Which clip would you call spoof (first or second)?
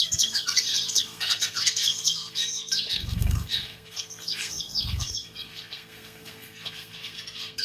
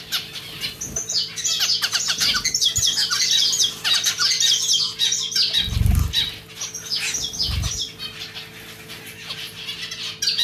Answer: first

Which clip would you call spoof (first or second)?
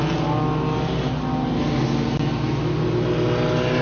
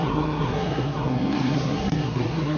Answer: second